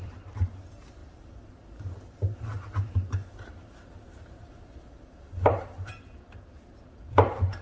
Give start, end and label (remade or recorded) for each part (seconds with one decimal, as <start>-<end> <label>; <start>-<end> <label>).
0.0-7.6 remade